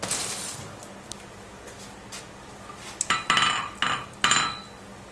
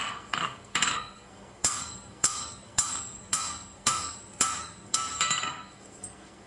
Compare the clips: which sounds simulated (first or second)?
second